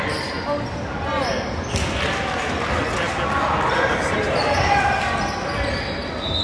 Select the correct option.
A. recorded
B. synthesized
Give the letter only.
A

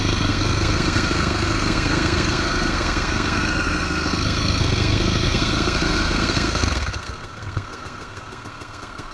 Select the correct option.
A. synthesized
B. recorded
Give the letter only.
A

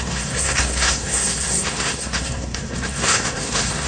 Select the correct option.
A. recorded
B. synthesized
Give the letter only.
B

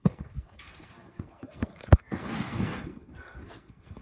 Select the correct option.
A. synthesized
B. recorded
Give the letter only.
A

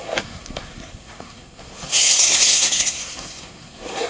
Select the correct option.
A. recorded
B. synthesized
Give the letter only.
B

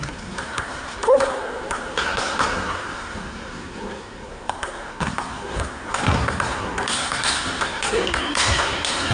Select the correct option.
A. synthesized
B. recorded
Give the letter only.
A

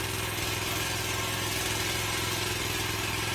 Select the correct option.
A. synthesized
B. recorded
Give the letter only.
B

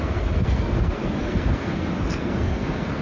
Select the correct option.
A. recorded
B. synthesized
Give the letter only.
B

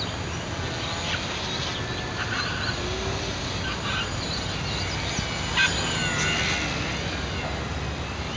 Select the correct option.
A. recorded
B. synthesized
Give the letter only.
A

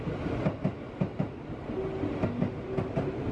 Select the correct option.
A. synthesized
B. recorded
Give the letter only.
B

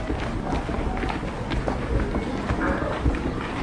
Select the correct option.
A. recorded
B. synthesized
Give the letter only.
A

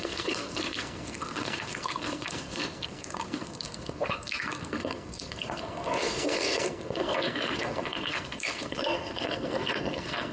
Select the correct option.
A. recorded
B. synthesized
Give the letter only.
B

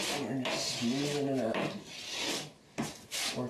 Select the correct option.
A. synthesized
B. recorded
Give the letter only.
B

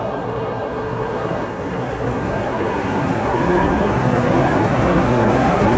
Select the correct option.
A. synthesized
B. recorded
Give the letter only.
A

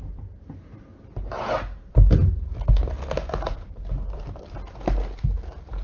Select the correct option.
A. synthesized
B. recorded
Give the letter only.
B